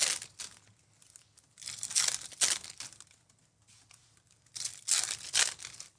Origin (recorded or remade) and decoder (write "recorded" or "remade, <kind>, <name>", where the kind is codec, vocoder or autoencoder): recorded